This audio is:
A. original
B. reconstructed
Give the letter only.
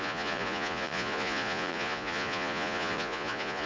B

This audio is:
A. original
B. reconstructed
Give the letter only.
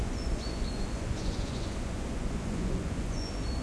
B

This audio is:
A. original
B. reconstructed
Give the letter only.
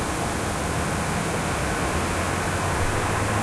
A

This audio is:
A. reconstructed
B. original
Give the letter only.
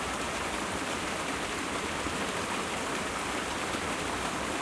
B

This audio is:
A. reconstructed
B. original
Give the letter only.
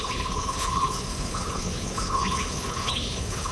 A